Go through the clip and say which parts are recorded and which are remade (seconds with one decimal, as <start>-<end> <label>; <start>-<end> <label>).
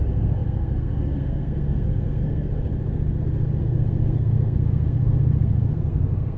0.0-2.7 remade; 2.7-3.6 recorded; 3.6-6.4 remade